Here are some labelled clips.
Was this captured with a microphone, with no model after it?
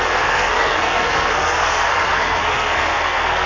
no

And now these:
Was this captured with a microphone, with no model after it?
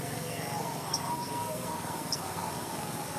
no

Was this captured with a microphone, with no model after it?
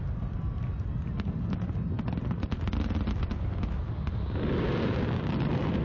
yes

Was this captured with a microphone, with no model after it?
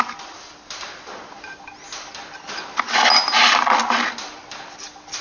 yes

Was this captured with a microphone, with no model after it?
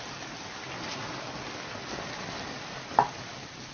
yes